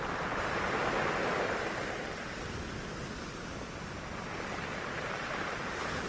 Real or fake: real